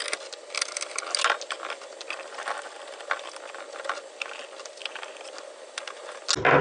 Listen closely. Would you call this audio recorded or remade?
recorded